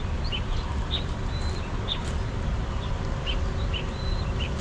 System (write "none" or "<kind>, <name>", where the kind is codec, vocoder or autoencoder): vocoder, BigVGAN v2